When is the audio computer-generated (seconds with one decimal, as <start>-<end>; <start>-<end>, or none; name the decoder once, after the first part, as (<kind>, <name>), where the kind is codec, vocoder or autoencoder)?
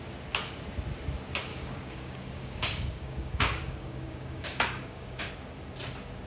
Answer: 1.5-5.3 (codec, DAC)